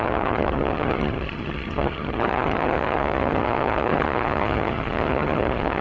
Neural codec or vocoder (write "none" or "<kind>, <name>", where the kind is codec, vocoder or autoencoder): vocoder, HiFi-GAN